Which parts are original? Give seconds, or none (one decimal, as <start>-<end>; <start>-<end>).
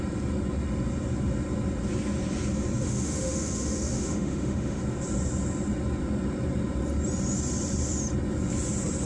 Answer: 0.0-2.8; 4.8-9.1